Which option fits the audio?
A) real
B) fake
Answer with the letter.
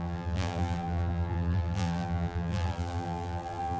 B